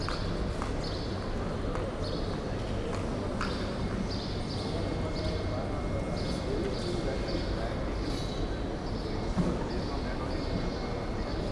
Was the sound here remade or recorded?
recorded